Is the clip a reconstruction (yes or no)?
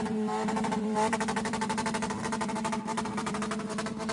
yes